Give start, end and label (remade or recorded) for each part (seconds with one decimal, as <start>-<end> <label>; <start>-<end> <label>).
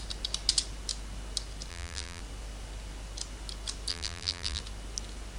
0.0-1.7 recorded; 1.7-2.2 remade; 2.2-3.9 recorded; 3.9-4.6 remade; 4.6-5.4 recorded